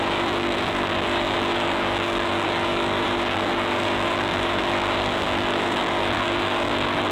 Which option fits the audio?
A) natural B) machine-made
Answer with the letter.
B